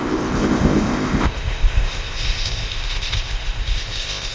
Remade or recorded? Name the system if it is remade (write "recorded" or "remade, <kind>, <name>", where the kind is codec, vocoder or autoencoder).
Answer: remade, codec, ZipCodec